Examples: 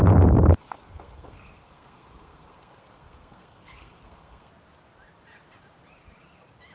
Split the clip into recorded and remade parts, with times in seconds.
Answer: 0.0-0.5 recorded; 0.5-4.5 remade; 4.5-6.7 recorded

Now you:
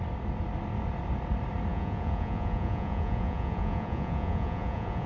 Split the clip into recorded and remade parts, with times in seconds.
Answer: 0.0-1.7 recorded; 1.7-5.1 remade

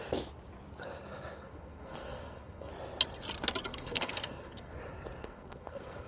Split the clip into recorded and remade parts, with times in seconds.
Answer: 0.0-1.4 recorded; 1.4-2.7 remade; 2.7-3.7 recorded; 3.7-4.7 remade; 4.7-5.2 recorded; 5.2-6.1 remade